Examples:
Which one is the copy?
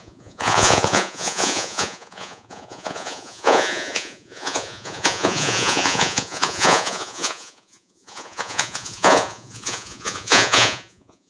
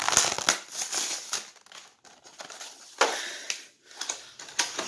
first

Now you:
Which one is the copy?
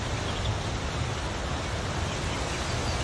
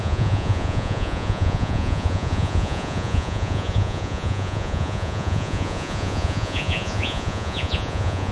second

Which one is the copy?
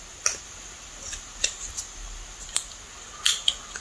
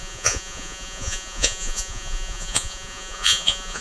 second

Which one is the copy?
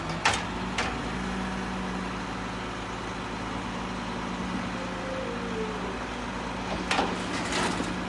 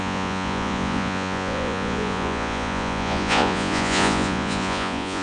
second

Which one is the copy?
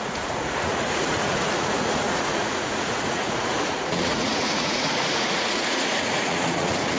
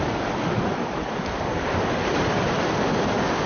first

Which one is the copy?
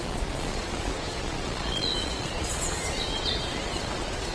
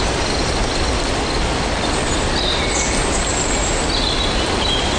first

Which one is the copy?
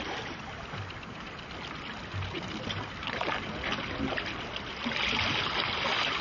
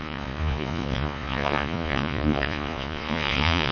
second